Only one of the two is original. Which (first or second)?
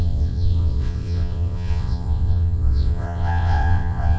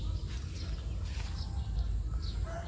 second